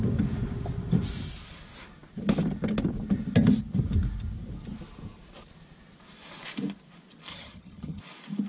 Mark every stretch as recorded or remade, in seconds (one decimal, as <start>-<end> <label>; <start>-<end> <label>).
0.0-7.3 recorded; 7.3-8.0 remade; 8.0-8.5 recorded